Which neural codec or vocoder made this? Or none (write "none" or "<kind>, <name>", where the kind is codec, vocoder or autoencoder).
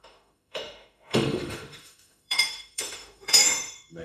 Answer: autoencoder, DAC-VAE